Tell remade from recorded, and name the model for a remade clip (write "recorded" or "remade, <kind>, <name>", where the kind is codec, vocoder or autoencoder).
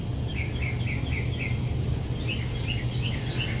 recorded